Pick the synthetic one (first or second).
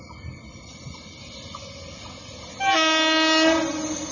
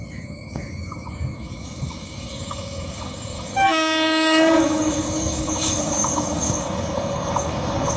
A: second